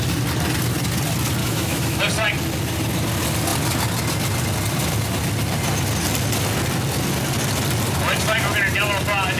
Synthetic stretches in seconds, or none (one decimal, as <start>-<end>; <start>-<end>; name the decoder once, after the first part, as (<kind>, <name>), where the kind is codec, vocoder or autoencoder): 1.4-2.0 (autoencoder, DAC-VAE)